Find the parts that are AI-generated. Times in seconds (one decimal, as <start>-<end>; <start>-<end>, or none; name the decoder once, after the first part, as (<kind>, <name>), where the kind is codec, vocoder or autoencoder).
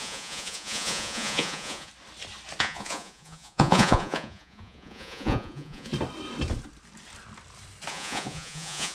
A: 0.0-1.9 (vocoder, Vocos); 2.6-5.9; 7.9-8.9